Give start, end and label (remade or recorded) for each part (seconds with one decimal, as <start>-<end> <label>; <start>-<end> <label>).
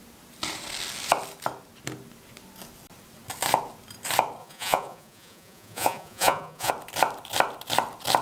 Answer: 0.0-4.4 recorded; 4.4-6.7 remade; 6.7-8.2 recorded